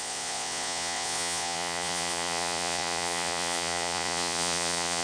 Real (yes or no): no